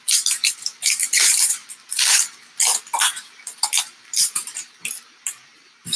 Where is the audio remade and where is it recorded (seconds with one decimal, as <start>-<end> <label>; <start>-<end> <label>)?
0.0-1.6 remade; 1.6-3.0 recorded; 3.0-4.8 remade; 4.8-5.4 recorded; 5.4-6.0 remade